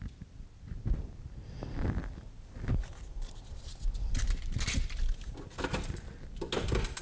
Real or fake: real